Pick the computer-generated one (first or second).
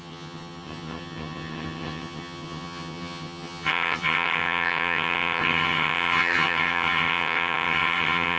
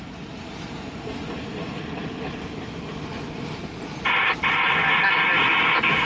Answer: first